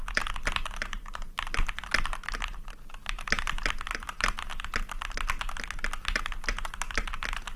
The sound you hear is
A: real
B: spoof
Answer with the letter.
A